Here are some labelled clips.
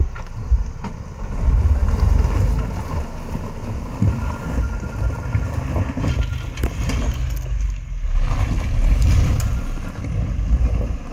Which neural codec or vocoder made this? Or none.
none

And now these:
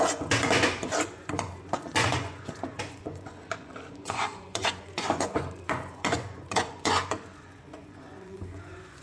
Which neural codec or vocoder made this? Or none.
vocoder, Vocos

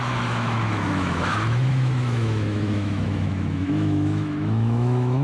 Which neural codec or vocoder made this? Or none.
autoencoder, DAC-VAE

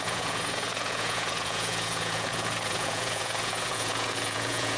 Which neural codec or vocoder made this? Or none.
vocoder, Vocos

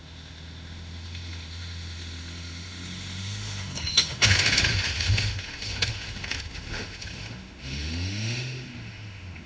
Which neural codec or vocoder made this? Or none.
autoencoder, DAC-VAE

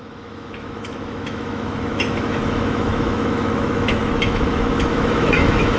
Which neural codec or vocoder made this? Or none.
autoencoder, DAC-VAE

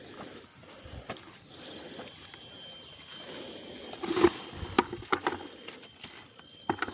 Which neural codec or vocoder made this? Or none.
vocoder, BigVGAN v2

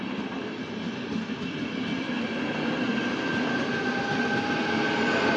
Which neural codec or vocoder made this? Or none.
none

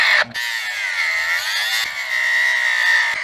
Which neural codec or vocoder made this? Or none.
none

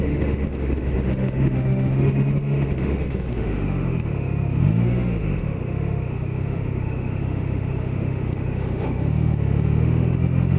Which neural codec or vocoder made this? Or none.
autoencoder, DAC-VAE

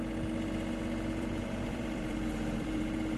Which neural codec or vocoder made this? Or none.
vocoder, BigVGAN v2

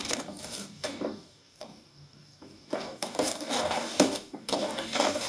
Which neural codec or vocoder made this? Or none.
codec, DAC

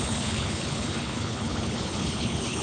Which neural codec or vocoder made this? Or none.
codec, HILCodec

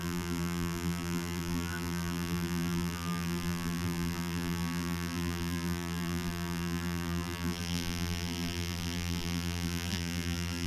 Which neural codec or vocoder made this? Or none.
vocoder, BigVGAN v2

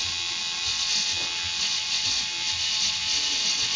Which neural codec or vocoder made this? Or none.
vocoder, WaveNeXt